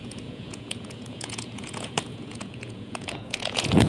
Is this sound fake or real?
fake